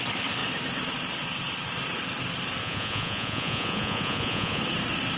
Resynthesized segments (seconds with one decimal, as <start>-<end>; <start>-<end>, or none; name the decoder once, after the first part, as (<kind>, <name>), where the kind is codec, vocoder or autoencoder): 2.6-4.6 (vocoder, Vocos)